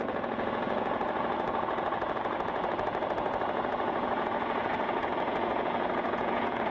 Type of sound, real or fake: fake